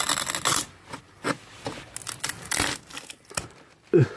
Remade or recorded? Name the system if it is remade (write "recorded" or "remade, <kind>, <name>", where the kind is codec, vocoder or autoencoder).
recorded